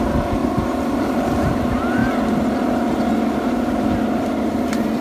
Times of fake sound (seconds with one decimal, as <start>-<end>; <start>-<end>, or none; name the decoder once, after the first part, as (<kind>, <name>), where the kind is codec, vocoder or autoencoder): 0.0-0.4 (vocoder, BigVGAN v2); 1.5-2.0